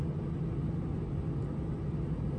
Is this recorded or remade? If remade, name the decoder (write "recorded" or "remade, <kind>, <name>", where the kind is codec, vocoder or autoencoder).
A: recorded